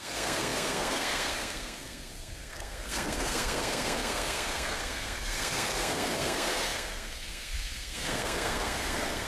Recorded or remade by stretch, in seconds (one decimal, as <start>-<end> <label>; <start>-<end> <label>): 0.0-9.3 remade